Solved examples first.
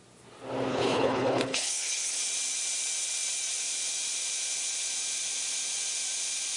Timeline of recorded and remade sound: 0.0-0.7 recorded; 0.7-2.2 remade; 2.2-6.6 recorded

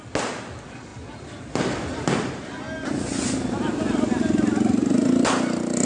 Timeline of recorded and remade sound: 0.0-5.8 recorded

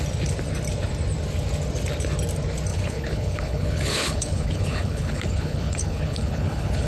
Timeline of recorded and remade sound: 0.0-2.7 recorded; 2.7-6.9 remade